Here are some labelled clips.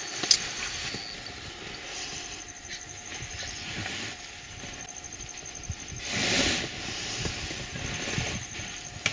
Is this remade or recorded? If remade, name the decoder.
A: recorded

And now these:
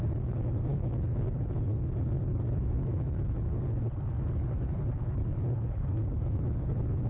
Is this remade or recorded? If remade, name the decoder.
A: remade, codec, HILCodec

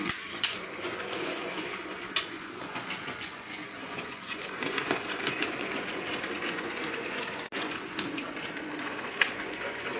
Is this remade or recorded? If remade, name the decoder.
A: remade, vocoder, Vocos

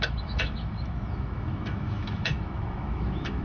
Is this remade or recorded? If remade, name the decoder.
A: remade, autoencoder, DAC-VAE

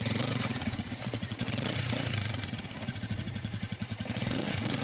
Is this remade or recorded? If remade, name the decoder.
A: remade, vocoder, Vocos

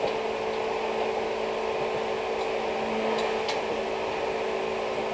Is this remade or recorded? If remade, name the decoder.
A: recorded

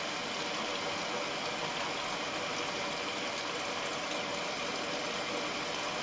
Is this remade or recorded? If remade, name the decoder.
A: recorded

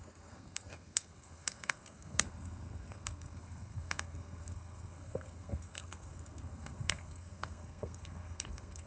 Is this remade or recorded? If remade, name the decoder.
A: remade, codec, SNAC